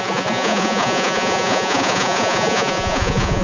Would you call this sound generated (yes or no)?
yes